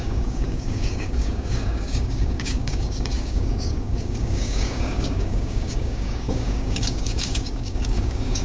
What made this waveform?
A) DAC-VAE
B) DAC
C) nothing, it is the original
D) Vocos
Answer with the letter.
B